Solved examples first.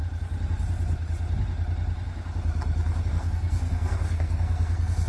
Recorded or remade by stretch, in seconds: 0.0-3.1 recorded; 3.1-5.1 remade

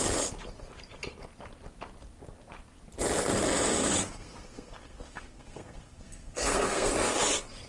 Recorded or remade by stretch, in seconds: 0.0-4.0 recorded; 4.0-6.9 remade; 6.9-7.7 recorded

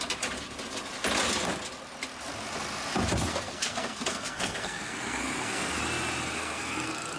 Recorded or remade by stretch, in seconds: 0.0-3.3 recorded; 3.3-5.8 remade; 5.8-6.4 recorded; 6.4-7.2 remade

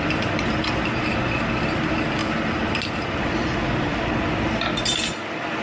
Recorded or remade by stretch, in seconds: 0.0-5.6 recorded

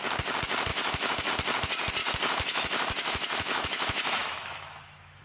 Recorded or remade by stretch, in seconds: 0.0-0.7 recorded; 0.7-1.3 remade; 1.3-2.0 recorded; 2.0-5.2 remade

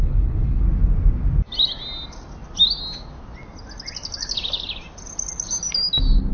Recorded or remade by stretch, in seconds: 0.0-0.6 remade; 0.6-6.3 recorded